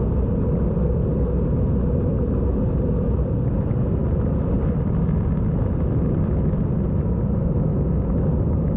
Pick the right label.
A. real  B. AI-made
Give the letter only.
A